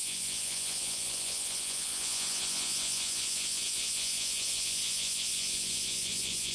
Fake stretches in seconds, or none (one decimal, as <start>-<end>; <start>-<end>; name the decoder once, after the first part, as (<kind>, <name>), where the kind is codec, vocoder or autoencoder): 0.0-6.5 (vocoder, Vocos)